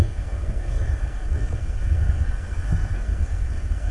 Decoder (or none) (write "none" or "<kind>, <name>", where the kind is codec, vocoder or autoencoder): codec, SNAC